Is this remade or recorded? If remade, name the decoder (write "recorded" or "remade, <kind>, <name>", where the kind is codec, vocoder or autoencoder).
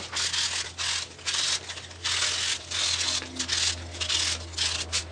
recorded